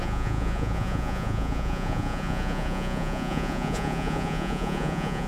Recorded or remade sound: remade